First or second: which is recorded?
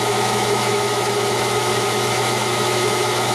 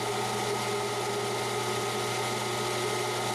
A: second